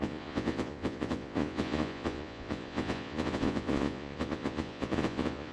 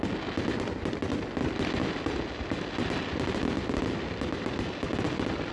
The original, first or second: second